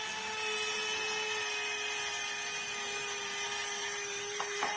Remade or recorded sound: recorded